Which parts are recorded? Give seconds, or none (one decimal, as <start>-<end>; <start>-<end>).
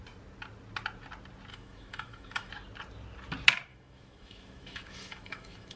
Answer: 0.0-1.5; 2.5-3.7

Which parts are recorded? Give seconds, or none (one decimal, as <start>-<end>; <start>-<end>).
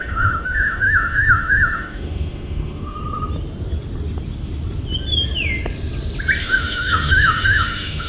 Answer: 3.0-6.4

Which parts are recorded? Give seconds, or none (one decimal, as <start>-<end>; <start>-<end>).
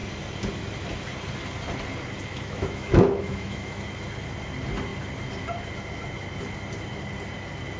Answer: 0.0-2.3; 3.8-7.8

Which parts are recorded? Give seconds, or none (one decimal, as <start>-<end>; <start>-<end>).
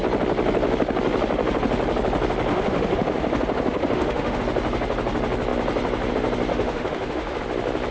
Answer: 0.0-2.5; 4.4-6.5; 7.4-7.9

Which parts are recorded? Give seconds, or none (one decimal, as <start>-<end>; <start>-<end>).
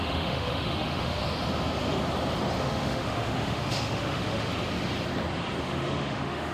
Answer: 1.2-2.6; 4.5-5.6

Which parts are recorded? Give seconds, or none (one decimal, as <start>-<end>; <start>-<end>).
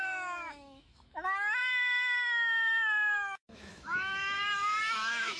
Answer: none